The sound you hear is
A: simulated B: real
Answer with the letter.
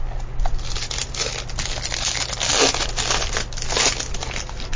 B